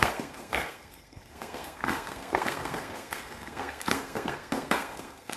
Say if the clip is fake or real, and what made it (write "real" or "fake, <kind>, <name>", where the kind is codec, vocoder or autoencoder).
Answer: fake, codec, SNAC